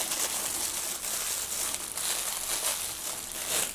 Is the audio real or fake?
real